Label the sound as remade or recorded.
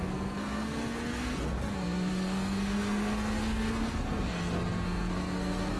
remade